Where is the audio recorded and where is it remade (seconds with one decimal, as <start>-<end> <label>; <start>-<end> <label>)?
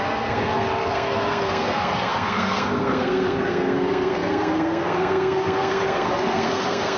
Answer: 0.0-7.0 remade